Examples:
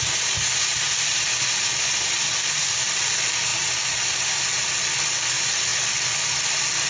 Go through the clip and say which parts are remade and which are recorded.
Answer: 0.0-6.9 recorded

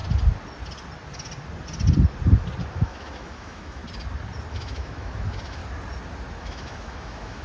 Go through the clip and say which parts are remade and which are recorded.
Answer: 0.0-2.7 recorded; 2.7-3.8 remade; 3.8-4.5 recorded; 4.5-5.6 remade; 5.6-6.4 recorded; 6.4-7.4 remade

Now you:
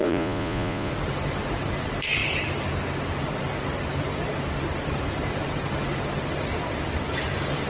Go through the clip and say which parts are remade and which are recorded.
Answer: 0.0-0.9 remade; 0.9-7.7 recorded

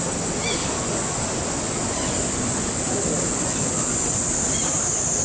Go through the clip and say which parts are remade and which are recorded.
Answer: 0.0-0.6 recorded; 0.6-2.7 remade; 2.7-3.3 recorded; 3.3-4.2 remade; 4.2-5.2 recorded

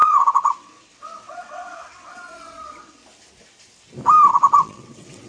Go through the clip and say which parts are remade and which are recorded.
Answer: 0.0-3.0 remade; 3.0-4.3 recorded; 4.3-5.3 remade

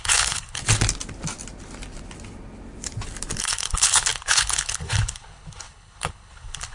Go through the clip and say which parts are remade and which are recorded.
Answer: 0.0-0.6 remade; 0.6-3.4 recorded; 3.4-6.7 remade

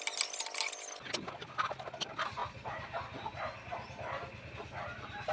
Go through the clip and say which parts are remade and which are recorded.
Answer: 0.0-5.3 recorded

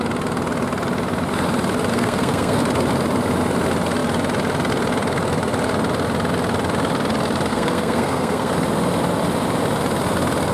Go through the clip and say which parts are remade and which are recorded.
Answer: 0.0-1.9 recorded; 1.9-2.6 remade; 2.6-7.5 recorded; 7.5-8.5 remade; 8.5-10.5 recorded